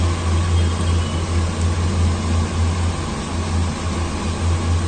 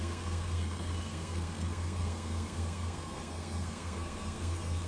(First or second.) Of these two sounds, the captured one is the first